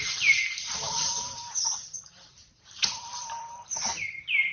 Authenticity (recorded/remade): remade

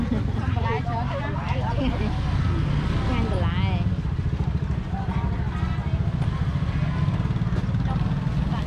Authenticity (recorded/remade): recorded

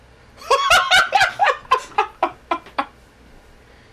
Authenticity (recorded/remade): recorded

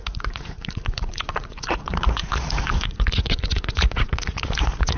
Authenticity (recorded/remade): remade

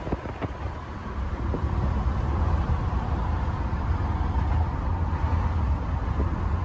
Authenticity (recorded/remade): recorded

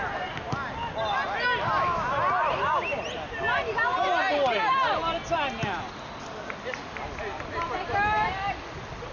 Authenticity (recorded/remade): recorded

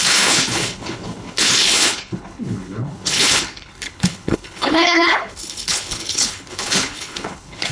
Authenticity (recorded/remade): remade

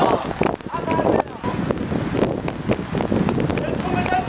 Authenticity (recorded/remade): recorded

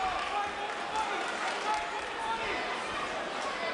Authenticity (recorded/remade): recorded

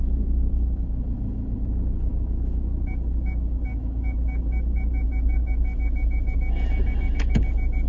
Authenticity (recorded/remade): remade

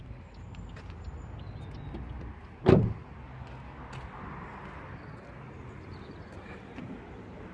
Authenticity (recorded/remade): recorded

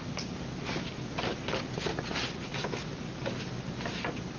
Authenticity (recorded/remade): recorded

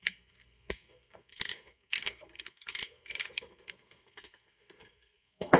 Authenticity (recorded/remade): remade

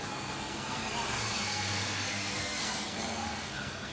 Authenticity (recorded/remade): remade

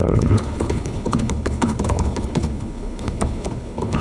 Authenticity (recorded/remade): remade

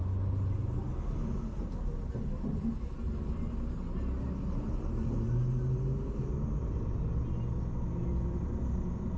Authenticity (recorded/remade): recorded